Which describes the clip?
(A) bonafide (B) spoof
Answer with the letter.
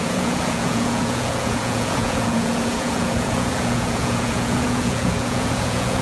B